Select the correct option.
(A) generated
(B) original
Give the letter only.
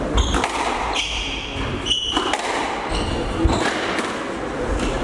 B